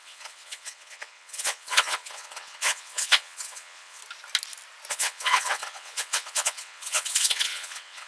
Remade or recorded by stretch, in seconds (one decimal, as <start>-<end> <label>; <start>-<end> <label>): 0.0-4.0 remade; 4.0-4.9 recorded; 4.9-8.1 remade